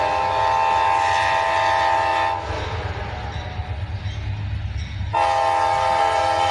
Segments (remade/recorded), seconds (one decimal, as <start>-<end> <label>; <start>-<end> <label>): 0.0-6.5 recorded